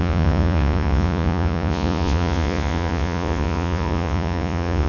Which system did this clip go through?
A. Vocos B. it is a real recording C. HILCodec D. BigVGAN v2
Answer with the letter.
A